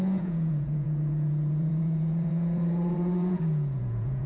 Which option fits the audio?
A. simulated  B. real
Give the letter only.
A